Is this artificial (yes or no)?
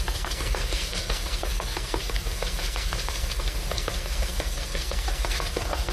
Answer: yes